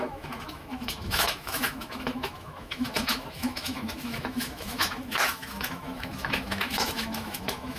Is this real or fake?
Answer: fake